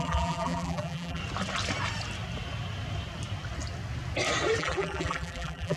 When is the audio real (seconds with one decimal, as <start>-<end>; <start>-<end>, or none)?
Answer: 1.2-4.6